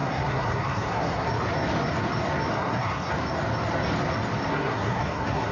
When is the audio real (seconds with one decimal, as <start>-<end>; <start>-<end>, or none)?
1.3-2.5; 3.1-4.5